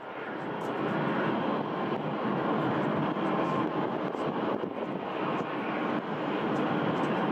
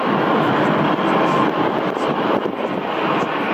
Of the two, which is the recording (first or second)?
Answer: first